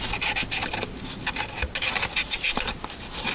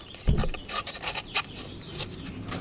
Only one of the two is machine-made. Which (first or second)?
second